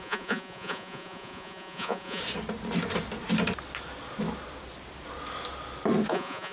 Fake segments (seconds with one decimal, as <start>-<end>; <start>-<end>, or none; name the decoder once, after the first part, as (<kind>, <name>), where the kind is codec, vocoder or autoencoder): 0.0-2.2 (vocoder, Vocos); 6.1-6.5